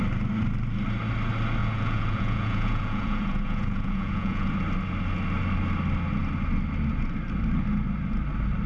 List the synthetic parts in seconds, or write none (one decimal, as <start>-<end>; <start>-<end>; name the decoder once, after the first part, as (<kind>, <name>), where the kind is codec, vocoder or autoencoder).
1.6-4.5 (vocoder, Vocos)